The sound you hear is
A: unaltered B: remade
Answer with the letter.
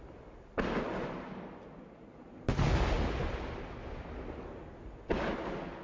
A